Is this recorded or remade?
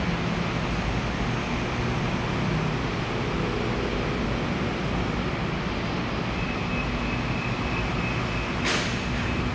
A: recorded